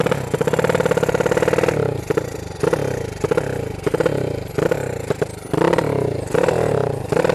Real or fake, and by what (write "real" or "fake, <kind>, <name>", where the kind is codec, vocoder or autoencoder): real